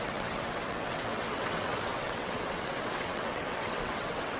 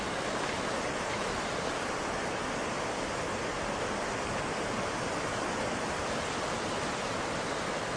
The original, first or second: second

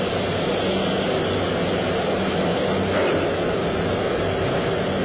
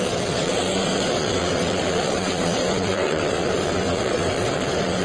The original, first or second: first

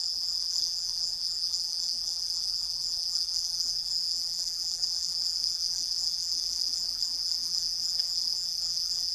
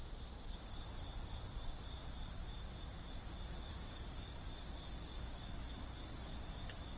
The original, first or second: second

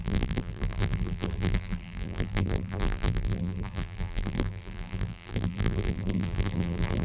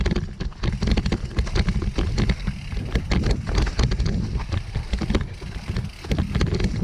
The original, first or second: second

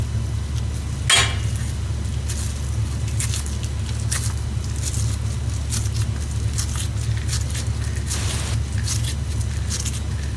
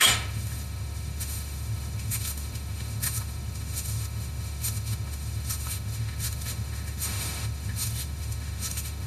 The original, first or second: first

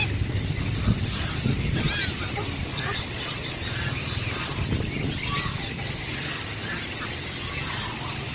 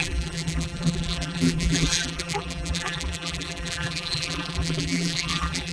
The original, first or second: first